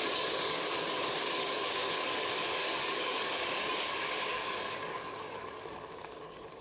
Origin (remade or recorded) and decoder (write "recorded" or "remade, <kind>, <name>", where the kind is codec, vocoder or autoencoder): remade, codec, DAC